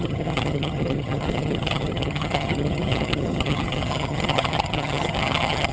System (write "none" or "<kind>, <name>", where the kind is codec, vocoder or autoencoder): vocoder, HiFi-GAN